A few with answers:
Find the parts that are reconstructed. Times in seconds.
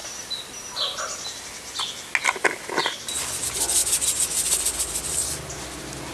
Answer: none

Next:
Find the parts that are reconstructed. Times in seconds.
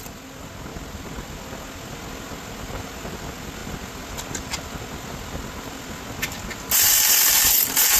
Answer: none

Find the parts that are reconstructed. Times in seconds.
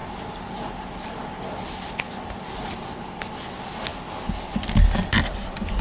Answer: none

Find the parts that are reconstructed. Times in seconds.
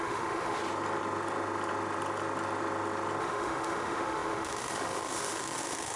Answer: 0.0-0.6 (autoencoder, DAC-VAE); 3.2-6.0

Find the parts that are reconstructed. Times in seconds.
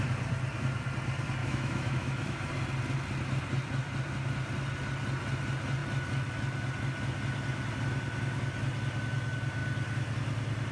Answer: 1.4-2.5 (autoencoder, DAC-VAE)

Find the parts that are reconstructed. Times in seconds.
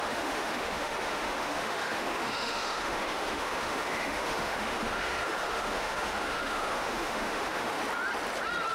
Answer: 0.0-7.8 (autoencoder, DAC-VAE)